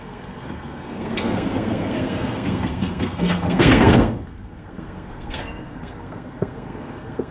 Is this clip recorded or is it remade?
remade